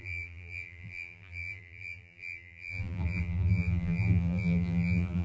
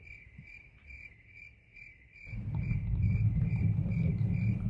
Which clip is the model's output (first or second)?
first